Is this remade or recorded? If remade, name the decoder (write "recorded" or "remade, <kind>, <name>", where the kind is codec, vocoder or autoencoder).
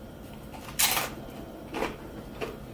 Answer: recorded